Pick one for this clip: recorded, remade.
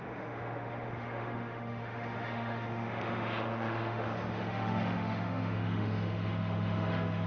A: remade